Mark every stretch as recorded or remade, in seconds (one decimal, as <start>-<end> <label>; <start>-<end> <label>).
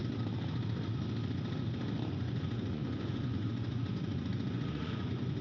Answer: 0.0-2.1 recorded; 2.1-5.4 remade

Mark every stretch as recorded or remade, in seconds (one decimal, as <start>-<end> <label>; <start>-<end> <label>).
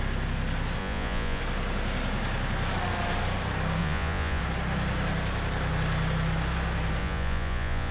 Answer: 0.0-0.8 recorded; 0.8-1.4 remade; 1.4-3.8 recorded; 3.8-4.4 remade; 4.4-7.0 recorded; 7.0-7.9 remade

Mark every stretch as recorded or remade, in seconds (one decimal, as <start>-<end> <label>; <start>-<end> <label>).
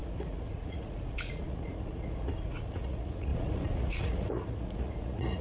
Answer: 0.0-5.4 remade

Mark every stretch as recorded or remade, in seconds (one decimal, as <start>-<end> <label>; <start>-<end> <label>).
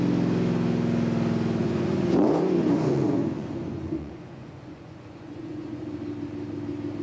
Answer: 0.0-1.6 recorded; 1.6-5.8 remade; 5.8-7.0 recorded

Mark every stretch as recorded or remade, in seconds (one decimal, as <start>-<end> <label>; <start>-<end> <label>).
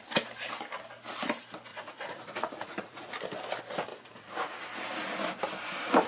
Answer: 0.0-1.7 recorded; 1.7-3.1 remade; 3.1-3.9 recorded; 3.9-4.5 remade; 4.5-6.1 recorded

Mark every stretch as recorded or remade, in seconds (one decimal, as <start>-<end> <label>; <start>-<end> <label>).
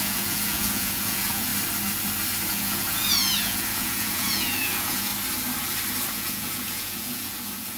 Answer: 0.0-1.5 remade; 1.5-2.5 recorded; 2.5-5.1 remade; 5.1-6.1 recorded; 6.1-7.8 remade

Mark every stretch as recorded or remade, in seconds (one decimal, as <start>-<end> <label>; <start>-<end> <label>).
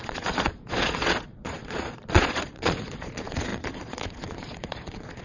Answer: 0.0-5.2 remade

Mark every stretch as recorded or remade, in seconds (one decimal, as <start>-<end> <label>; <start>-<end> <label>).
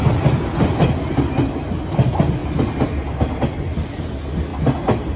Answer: 0.0-5.2 recorded